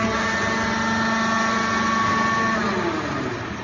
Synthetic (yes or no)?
no